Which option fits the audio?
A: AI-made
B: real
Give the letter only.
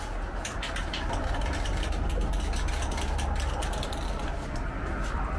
B